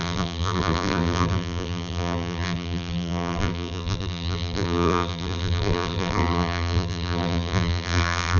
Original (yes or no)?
no